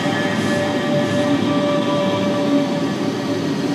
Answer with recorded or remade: recorded